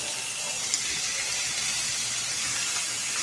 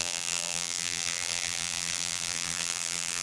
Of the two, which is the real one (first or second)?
first